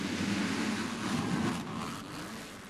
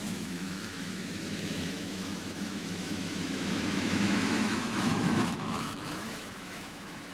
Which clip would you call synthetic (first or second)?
second